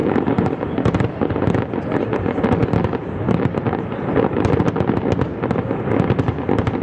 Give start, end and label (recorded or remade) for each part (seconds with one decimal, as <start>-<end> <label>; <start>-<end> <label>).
0.0-1.1 remade; 1.1-6.8 recorded